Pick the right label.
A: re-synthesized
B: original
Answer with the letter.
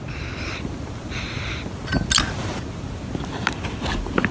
B